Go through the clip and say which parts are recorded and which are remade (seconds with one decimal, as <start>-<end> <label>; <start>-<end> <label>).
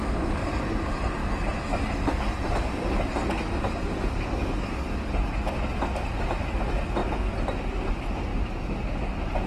0.0-4.4 recorded; 4.4-5.1 remade; 5.1-9.5 recorded